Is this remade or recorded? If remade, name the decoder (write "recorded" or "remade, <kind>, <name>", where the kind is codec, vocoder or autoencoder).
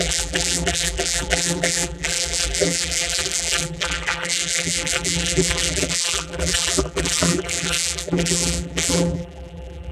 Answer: remade, vocoder, BigVGAN v2